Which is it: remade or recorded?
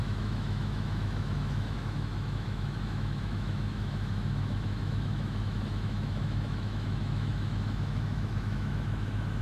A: remade